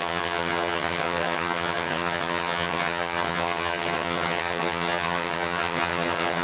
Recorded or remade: remade